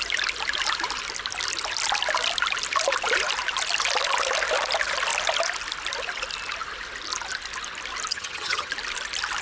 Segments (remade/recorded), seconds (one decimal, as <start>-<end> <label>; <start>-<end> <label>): 0.0-8.1 recorded; 8.1-8.7 remade; 8.7-9.4 recorded

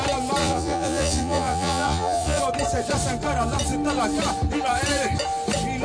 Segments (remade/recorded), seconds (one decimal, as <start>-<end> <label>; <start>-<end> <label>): 0.0-0.4 recorded; 0.4-2.4 remade; 2.4-5.8 recorded

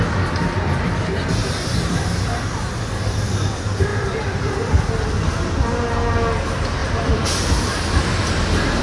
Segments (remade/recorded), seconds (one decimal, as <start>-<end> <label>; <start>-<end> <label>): 0.0-1.4 recorded; 1.4-2.0 remade; 2.0-3.9 recorded; 3.9-4.8 remade; 4.8-6.8 recorded; 6.8-7.4 remade; 7.4-8.8 recorded